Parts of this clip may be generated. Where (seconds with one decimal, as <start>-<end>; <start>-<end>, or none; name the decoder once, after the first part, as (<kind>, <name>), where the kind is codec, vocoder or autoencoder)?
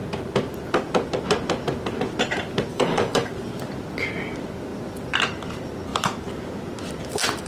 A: 2.7-3.3 (codec, DAC)